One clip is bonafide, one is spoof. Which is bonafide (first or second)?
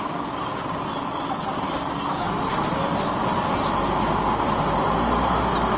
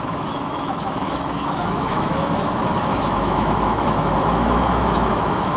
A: first